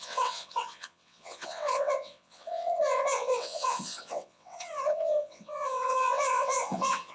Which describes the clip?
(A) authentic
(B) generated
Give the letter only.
B